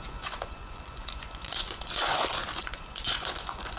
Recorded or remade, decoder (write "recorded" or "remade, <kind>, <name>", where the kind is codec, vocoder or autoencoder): remade, vocoder, Vocos